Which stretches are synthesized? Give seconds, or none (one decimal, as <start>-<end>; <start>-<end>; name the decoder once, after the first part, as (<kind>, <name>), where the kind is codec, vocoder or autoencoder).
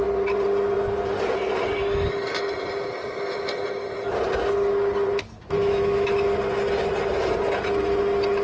5.6-6.1 (autoencoder, DAC-VAE)